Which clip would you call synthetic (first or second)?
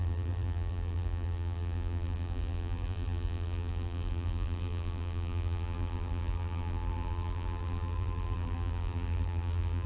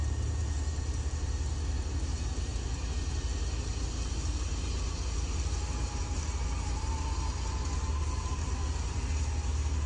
first